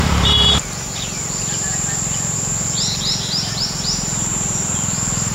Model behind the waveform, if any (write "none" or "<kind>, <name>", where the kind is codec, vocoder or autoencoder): vocoder, BigVGAN v2